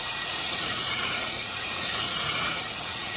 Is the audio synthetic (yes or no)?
yes